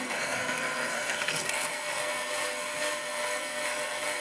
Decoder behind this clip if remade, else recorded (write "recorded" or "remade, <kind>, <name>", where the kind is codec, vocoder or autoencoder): remade, codec, SNAC